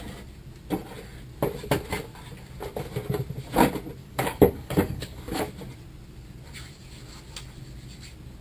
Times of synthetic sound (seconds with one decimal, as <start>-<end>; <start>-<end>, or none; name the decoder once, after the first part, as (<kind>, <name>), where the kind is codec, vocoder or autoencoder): 4.0-5.4 (codec, DAC)